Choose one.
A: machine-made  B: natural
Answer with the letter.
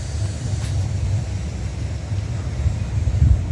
B